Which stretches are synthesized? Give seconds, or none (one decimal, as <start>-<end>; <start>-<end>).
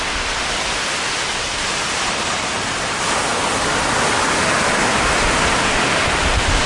none